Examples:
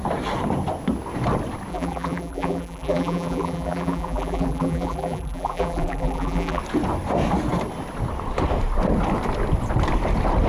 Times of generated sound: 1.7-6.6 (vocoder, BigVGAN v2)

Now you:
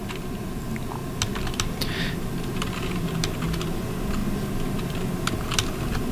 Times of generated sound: none